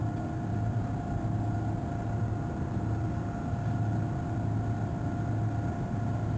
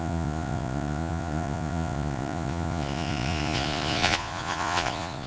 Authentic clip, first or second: first